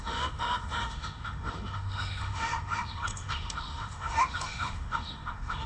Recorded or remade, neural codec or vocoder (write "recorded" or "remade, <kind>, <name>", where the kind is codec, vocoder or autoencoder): remade, autoencoder, DAC-VAE